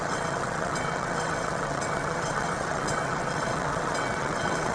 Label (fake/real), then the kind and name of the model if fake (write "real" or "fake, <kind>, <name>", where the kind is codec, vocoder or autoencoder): fake, vocoder, WaveNeXt